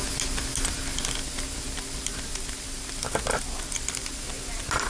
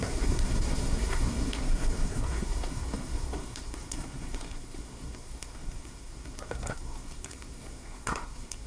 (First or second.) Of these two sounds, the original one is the first